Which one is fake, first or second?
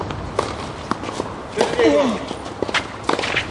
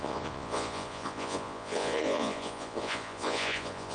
second